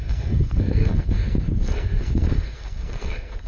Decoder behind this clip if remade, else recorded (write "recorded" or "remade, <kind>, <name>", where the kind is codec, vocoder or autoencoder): remade, codec, SNAC